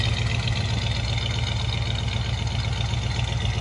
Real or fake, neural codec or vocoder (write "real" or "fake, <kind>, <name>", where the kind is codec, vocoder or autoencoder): real